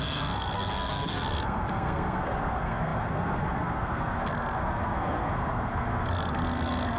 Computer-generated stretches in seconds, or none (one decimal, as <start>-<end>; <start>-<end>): 0.0-7.0